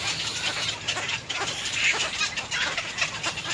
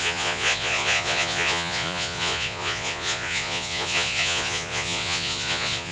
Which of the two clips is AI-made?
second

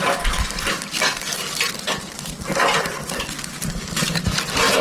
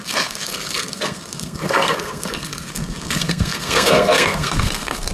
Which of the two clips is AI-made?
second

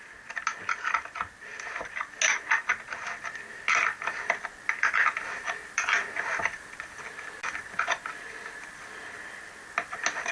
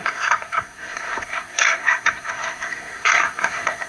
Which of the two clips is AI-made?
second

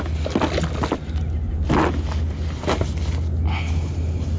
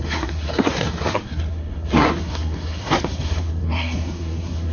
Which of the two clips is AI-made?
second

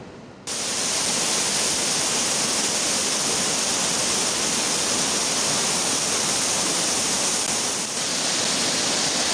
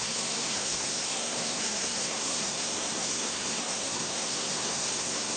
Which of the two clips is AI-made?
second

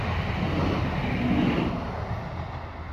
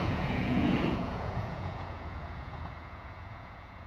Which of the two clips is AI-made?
second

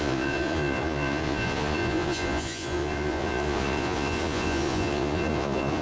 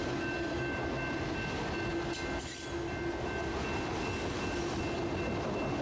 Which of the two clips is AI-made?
first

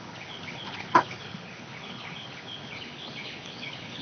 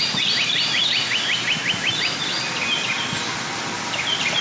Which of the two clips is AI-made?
first